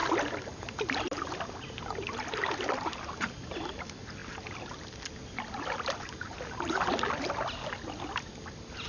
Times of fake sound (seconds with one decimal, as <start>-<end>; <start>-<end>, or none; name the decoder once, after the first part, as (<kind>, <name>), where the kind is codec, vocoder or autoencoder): none